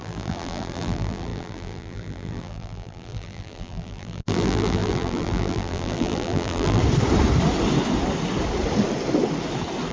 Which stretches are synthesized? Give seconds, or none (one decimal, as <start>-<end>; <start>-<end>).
0.0-6.8